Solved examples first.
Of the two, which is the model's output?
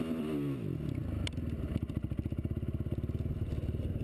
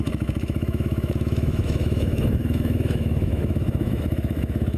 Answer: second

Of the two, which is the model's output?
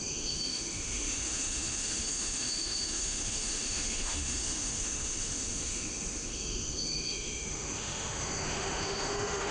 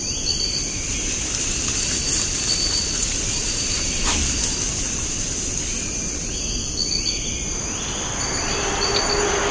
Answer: first